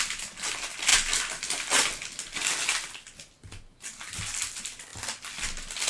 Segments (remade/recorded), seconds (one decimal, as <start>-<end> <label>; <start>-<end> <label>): 0.0-5.9 recorded